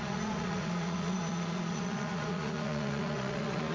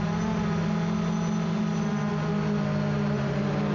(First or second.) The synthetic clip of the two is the first